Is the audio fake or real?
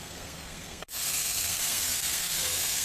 fake